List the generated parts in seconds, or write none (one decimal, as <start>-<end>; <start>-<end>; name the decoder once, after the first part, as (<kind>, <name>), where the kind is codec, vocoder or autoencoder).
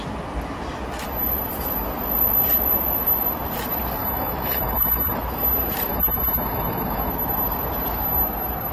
4.0-5.2 (autoencoder, DAC-VAE); 5.9-7.1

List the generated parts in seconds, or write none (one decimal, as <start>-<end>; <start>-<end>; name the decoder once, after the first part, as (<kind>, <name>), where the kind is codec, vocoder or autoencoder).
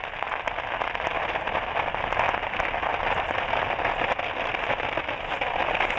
none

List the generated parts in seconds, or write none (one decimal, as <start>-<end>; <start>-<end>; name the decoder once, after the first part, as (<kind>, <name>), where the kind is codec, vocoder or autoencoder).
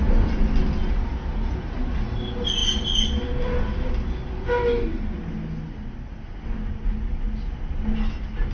none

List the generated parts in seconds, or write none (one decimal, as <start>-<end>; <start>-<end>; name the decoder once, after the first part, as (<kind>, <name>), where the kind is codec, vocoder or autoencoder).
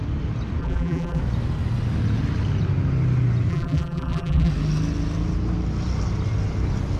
0.6-1.2 (vocoder, BigVGAN v2); 3.5-4.5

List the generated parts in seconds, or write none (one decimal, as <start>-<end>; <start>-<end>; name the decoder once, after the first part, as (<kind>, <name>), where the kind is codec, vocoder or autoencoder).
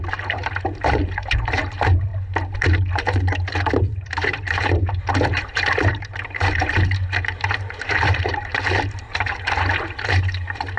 0.0-8.5 (vocoder, BigVGAN v2); 9.1-10.8